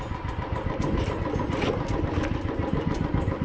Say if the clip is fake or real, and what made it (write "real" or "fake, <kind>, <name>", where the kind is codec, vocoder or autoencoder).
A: real